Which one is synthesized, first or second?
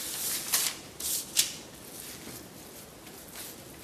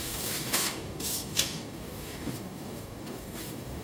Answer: second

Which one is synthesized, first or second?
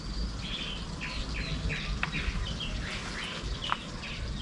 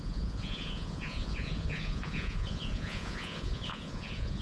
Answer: second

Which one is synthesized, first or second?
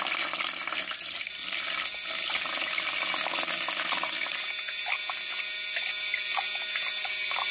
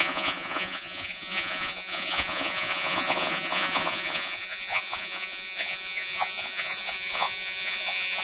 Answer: second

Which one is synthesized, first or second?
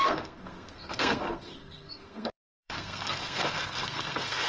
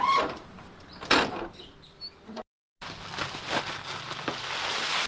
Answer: first